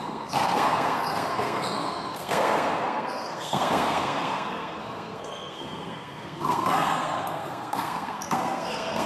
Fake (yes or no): yes